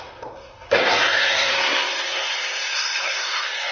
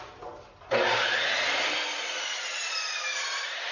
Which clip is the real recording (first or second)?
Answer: second